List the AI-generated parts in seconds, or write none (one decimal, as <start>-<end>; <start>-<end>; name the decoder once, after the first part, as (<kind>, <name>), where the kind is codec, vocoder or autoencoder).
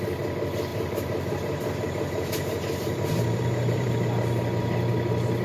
0.7-3.9 (vocoder, BigVGAN v2)